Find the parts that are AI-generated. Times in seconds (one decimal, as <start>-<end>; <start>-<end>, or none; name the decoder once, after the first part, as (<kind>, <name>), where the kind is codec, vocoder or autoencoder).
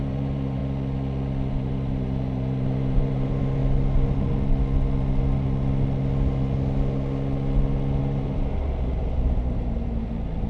0.0-0.6 (vocoder, BigVGAN v2); 1.5-3.6; 8.0-10.5